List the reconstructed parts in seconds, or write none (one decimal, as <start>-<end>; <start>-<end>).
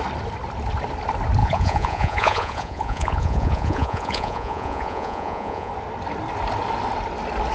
1.4-5.7